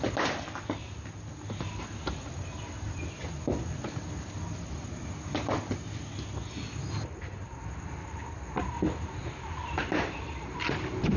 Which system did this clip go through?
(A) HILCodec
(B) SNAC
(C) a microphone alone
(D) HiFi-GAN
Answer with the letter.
C